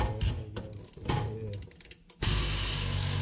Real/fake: real